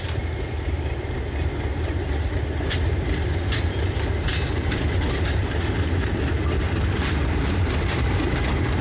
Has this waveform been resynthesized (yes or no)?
yes